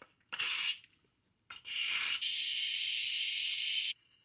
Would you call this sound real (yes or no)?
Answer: no